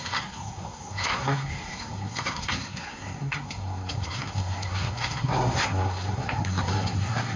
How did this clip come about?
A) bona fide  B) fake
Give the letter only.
B